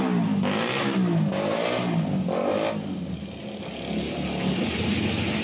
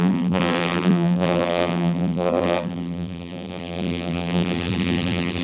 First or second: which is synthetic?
second